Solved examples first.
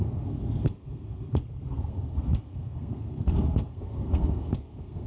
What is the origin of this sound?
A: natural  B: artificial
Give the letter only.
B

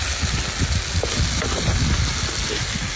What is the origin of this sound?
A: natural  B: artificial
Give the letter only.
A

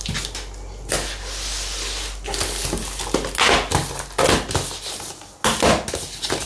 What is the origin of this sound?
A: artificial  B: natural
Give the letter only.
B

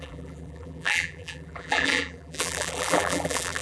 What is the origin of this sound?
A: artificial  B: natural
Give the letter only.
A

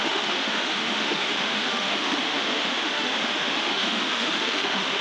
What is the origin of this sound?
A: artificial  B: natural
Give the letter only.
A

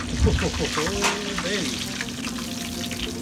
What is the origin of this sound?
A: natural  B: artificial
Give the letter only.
A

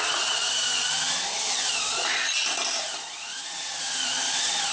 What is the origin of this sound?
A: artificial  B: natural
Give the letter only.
B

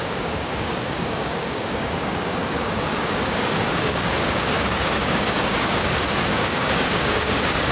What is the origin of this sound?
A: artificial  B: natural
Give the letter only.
A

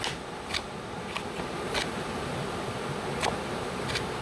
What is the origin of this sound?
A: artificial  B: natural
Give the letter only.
B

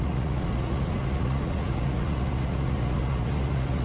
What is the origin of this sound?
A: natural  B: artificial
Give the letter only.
B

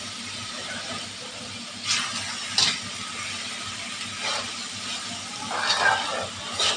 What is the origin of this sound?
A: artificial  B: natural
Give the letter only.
B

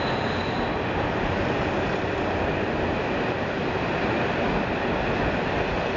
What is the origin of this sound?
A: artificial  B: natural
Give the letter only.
B